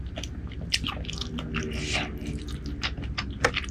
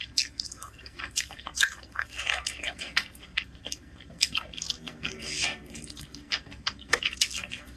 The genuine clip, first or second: first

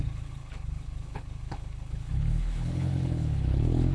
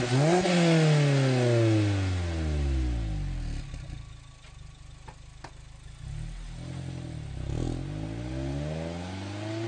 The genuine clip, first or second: second